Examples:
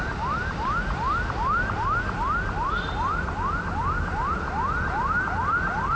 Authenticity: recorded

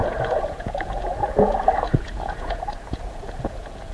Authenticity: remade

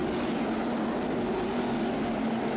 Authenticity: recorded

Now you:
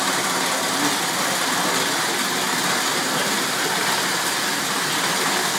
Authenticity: recorded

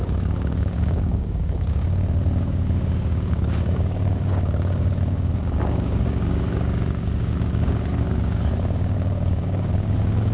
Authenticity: remade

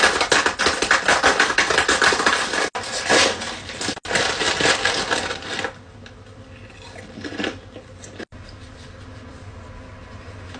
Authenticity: recorded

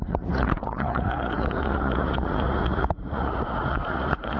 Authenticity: remade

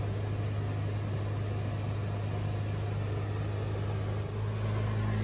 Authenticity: recorded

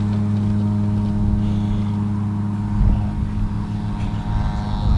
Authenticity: recorded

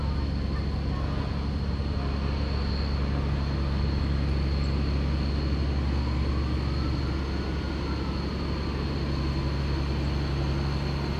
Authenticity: recorded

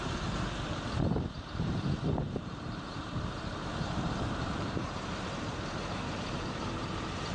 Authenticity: remade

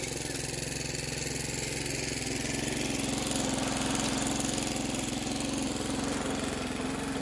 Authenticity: recorded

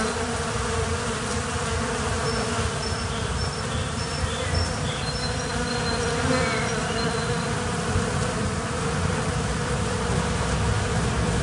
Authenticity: recorded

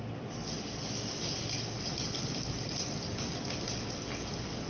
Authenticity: recorded